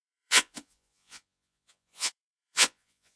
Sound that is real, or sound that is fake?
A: fake